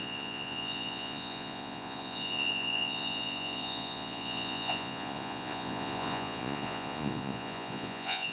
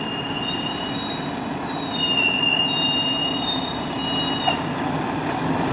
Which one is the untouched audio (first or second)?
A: second